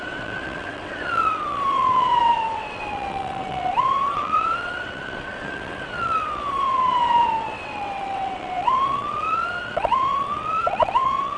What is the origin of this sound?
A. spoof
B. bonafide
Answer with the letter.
A